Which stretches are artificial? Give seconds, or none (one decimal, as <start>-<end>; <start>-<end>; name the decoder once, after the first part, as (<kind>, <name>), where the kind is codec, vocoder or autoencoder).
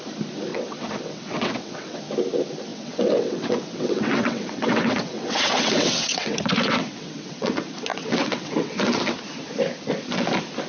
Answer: 0.5-2.0 (vocoder, WaveNeXt); 2.7-7.5; 7.9-9.0